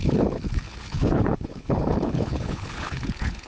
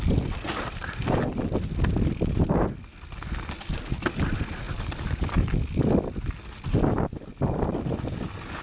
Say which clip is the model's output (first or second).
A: first